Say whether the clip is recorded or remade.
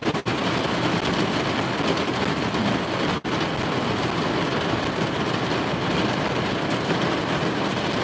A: recorded